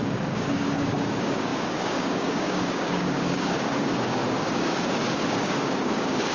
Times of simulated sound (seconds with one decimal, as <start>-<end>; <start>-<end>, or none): 0.0-6.3